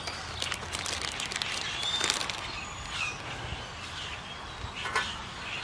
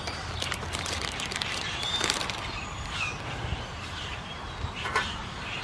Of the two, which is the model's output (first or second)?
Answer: second